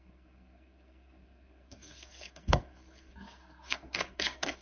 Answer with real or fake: fake